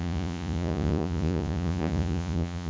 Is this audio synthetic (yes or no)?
yes